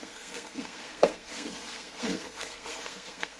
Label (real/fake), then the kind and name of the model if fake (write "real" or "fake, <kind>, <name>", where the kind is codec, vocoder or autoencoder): fake, codec, SNAC